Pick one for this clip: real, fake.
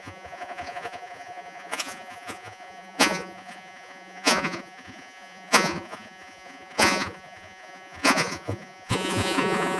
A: fake